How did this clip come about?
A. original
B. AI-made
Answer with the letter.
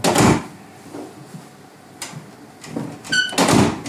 A